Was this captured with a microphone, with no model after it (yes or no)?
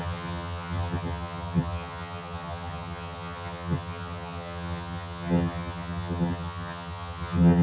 no